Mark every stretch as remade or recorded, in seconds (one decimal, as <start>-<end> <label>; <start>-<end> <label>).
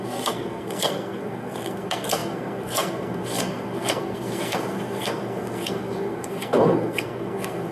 0.0-7.7 remade